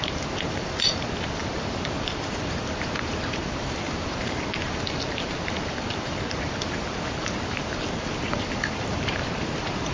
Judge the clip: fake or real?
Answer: fake